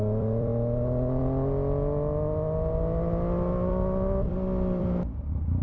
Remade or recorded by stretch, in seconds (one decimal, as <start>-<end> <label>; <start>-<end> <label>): 0.0-0.5 remade; 0.5-3.7 recorded; 3.7-5.6 remade